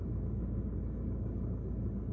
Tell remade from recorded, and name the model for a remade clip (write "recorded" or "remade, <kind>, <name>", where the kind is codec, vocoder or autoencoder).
remade, codec, DAC